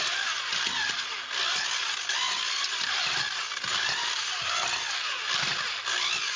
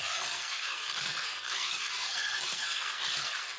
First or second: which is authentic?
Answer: first